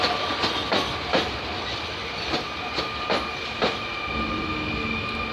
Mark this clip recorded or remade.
recorded